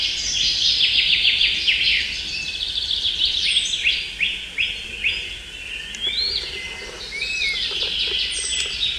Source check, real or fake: real